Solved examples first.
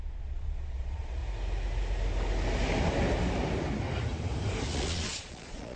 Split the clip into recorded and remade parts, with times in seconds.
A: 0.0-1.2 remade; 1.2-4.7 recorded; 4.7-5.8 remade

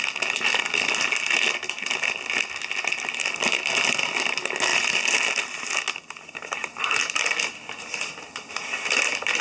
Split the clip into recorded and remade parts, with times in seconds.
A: 0.0-9.4 recorded

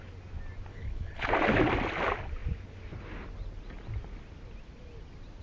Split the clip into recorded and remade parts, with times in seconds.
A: 0.0-0.7 recorded; 0.7-1.3 remade; 1.3-5.4 recorded

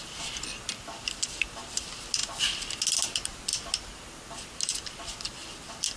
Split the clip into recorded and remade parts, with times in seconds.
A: 0.0-6.0 recorded

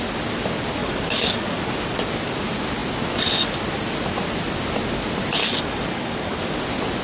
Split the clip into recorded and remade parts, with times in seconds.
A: 0.0-0.8 recorded; 0.8-1.6 remade; 1.6-5.4 recorded; 5.4-6.4 remade; 6.4-7.0 recorded